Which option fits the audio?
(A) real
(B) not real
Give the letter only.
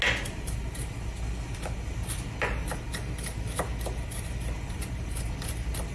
A